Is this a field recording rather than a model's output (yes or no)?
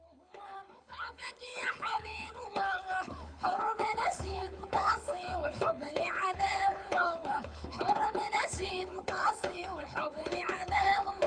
no